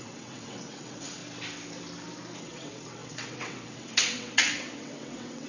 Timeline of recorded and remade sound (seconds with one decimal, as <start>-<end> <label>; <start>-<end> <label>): 0.0-1.2 remade; 1.2-2.4 recorded; 2.4-5.5 remade